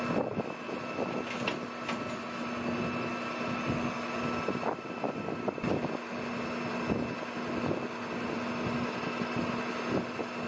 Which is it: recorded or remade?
recorded